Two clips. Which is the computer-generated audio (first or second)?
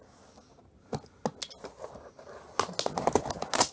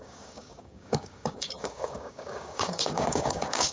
second